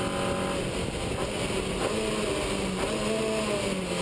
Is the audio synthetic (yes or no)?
no